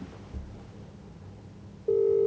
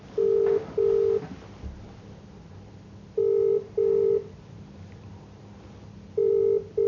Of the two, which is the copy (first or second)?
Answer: second